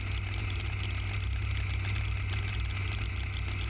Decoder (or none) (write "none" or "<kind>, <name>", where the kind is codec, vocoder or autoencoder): none